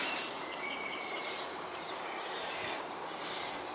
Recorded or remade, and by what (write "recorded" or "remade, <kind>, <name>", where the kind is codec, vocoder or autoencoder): remade, vocoder, BigVGAN v2